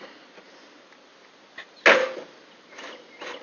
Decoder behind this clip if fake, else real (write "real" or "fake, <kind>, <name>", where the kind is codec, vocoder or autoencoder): real